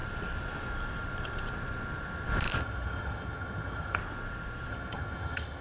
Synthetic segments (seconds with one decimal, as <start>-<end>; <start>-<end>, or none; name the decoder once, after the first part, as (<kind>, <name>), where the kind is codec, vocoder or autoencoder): 2.6-4.0 (vocoder, HiFi-GAN); 4.7-5.6